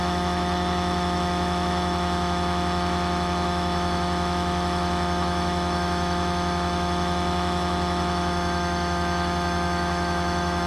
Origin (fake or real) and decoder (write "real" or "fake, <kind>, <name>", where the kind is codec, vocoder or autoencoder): fake, autoencoder, DAC-VAE